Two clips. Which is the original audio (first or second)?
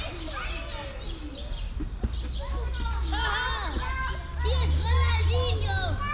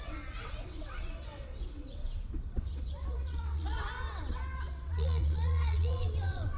first